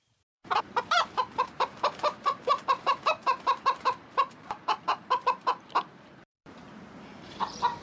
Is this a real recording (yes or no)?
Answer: no